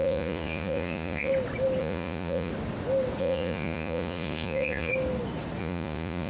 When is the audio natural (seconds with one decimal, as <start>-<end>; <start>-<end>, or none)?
1.3-1.8; 2.5-3.2; 4.9-5.6